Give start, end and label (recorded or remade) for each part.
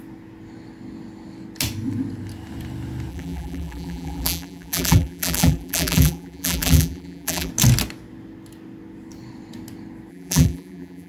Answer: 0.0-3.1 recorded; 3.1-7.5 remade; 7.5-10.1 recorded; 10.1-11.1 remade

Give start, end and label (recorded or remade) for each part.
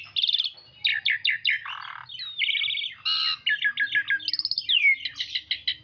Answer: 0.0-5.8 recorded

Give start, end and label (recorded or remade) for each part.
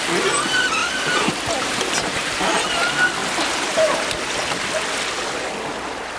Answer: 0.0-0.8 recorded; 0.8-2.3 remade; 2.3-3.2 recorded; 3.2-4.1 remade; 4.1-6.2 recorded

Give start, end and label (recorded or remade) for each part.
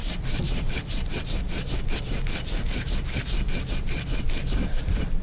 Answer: 0.0-5.2 recorded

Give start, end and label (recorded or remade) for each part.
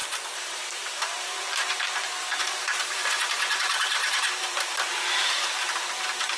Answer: 0.0-3.0 remade; 3.0-3.6 recorded; 3.6-6.4 remade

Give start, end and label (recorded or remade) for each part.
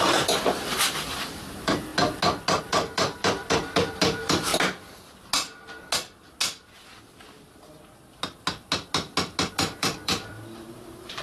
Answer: 0.0-1.9 remade; 1.9-2.6 recorded; 2.6-4.5 remade; 4.5-9.5 recorded; 9.5-11.2 remade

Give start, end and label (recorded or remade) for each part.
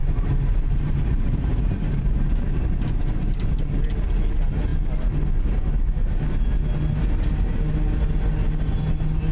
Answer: 0.0-3.5 remade; 3.5-9.3 recorded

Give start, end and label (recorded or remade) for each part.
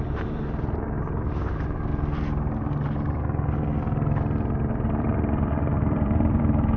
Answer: 0.0-1.9 remade; 1.9-4.7 recorded; 4.7-6.8 remade